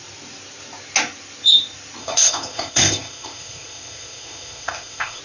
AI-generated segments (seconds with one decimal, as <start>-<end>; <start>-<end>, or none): 2.0-5.2